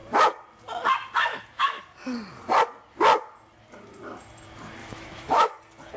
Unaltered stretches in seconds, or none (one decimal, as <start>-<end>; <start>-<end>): 0.0-1.3; 1.8-4.8; 5.6-6.0